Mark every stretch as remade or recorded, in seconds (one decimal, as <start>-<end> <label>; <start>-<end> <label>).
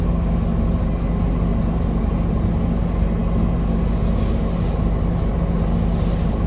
0.0-6.5 recorded